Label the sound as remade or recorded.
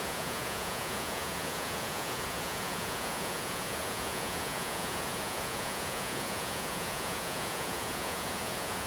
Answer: remade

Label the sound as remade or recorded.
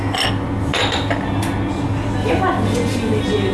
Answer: recorded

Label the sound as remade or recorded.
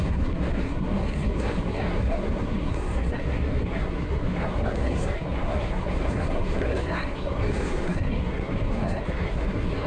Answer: remade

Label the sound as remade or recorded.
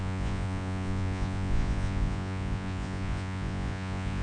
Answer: remade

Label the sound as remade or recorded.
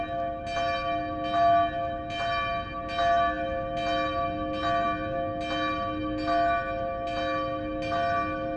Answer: recorded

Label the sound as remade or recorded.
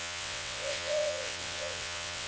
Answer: remade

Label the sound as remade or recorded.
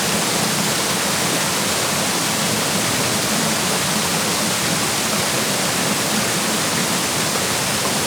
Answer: recorded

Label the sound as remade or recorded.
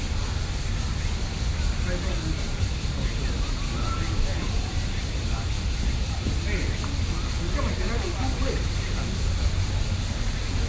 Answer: recorded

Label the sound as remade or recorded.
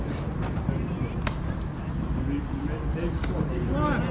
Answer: recorded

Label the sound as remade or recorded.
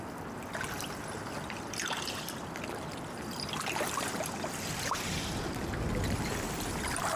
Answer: recorded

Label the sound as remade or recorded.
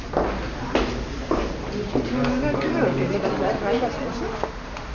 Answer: recorded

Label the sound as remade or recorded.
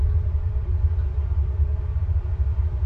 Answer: remade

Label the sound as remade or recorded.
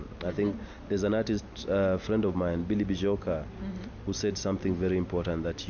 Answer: recorded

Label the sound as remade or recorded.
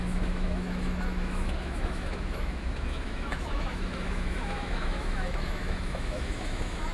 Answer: remade